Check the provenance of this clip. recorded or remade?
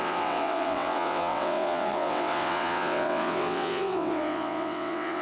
remade